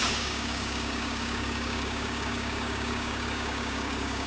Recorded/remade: remade